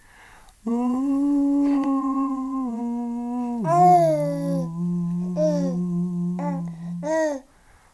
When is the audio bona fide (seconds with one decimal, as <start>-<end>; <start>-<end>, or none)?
0.0-0.7; 2.8-7.9